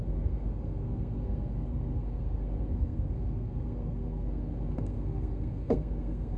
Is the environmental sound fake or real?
fake